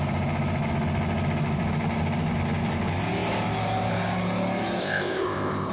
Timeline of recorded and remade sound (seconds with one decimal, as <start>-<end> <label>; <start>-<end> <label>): 0.0-4.8 recorded; 4.8-5.7 remade